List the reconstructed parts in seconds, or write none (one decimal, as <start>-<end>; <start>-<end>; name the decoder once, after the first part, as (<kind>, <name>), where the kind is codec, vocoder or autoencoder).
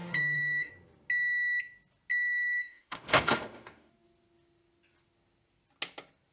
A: 0.0-0.7 (autoencoder, DAC-VAE); 2.1-3.9